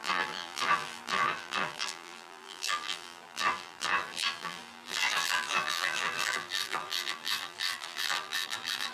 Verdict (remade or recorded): remade